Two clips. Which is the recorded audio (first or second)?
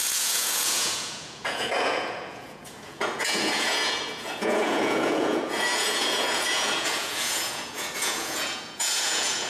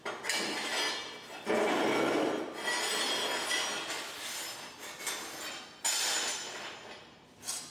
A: second